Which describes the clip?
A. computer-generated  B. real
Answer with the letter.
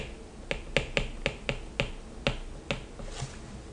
B